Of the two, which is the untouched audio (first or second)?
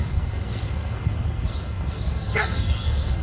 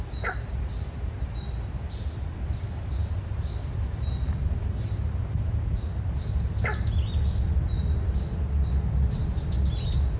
second